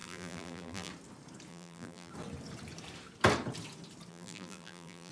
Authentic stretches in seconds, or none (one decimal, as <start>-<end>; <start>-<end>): 0.9-1.5; 2.1-4.1